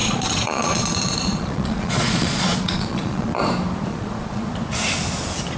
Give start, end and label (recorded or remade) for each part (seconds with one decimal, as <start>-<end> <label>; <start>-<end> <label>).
0.0-3.4 remade; 3.4-3.9 recorded; 3.9-4.5 remade; 4.5-5.6 recorded